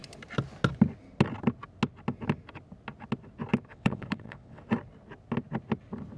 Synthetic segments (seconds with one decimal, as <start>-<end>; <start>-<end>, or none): 3.7-4.6